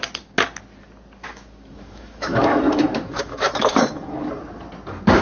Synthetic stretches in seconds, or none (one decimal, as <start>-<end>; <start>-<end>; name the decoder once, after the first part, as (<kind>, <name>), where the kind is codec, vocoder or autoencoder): 1.2-4.3 (autoencoder, DAC-VAE)